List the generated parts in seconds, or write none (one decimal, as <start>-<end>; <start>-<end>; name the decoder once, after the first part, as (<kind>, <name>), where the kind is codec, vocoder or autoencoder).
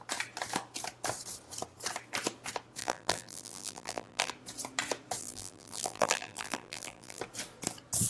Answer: 2.8-4.3 (vocoder, BigVGAN v2); 5.2-7.2